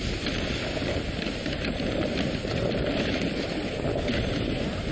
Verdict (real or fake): real